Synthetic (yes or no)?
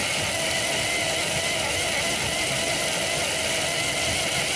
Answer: no